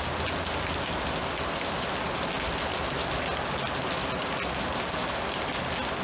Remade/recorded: recorded